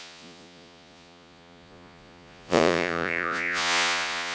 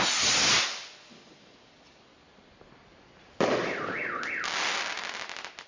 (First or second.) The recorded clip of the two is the second